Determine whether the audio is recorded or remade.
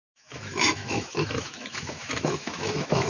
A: remade